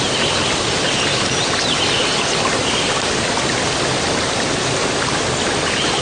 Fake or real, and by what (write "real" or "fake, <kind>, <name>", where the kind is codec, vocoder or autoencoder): real